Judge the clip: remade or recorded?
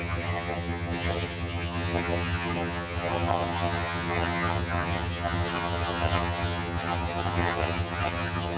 remade